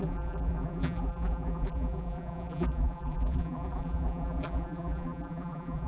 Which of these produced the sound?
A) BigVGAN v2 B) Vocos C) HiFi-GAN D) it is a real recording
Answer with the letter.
A